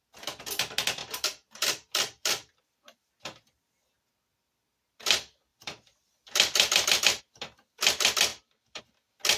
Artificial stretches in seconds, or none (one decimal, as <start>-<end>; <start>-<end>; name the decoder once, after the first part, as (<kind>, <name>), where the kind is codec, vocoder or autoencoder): 1.0-3.2 (vocoder, BigVGAN v2); 5.5-7.2; 8.3-8.8